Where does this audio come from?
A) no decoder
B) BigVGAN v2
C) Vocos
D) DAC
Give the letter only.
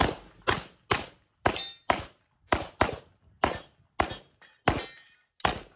A